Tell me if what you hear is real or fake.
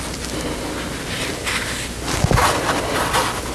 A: real